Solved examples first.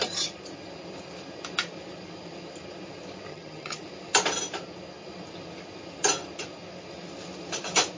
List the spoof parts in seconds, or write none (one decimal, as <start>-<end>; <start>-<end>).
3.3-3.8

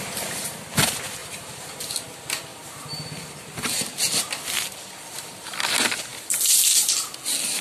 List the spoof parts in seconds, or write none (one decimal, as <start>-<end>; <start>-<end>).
1.2-1.9; 2.5-3.9

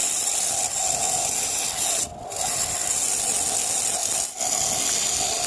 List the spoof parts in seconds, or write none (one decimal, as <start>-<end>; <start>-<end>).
none

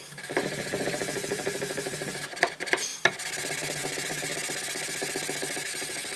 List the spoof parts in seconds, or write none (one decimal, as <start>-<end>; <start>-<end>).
0.0-2.9; 3.8-4.3

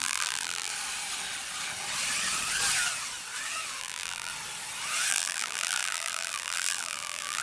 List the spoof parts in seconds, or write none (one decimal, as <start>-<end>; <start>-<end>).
0.0-0.7; 3.8-4.3; 5.1-7.4